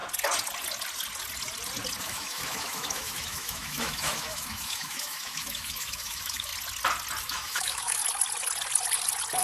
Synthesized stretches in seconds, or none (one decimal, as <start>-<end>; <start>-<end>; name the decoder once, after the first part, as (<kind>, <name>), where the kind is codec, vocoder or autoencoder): 2.0-6.5 (autoencoder, DAC-VAE); 7.2-8.0